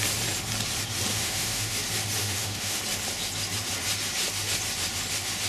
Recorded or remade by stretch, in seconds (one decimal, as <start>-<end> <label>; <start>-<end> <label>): 0.0-1.1 recorded; 1.1-1.8 remade; 1.8-2.2 recorded; 2.2-2.8 remade; 2.8-5.5 recorded